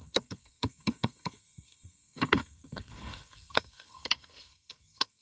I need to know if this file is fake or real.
fake